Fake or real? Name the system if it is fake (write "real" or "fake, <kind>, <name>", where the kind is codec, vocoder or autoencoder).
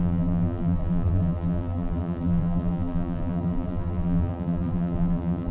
fake, vocoder, BigVGAN v2